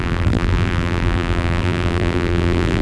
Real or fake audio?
fake